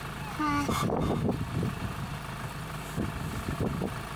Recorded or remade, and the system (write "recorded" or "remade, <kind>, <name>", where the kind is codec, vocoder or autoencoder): recorded